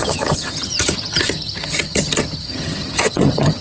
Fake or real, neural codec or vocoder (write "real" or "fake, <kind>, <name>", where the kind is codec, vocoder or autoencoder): fake, vocoder, HiFi-GAN